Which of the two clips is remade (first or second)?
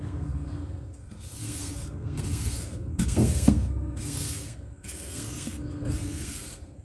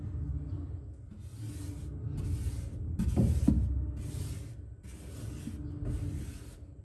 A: first